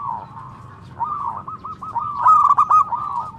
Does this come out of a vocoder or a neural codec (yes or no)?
no